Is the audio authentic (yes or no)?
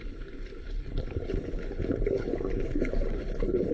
no